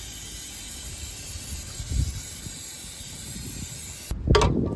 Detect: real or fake real